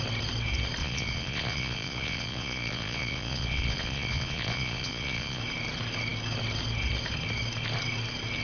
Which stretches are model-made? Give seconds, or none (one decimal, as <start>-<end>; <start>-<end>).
0.8-5.4